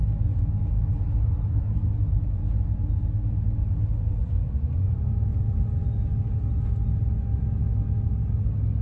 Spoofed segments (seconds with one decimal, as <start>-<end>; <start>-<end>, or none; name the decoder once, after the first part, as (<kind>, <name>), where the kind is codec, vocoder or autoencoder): 4.2-5.1 (vocoder, Vocos)